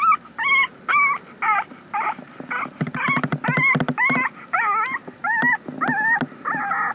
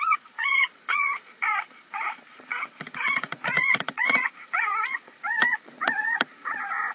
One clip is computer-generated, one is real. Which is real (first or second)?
first